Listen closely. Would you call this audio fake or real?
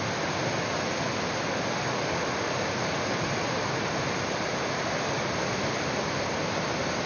real